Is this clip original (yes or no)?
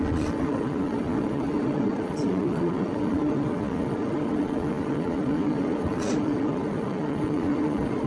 no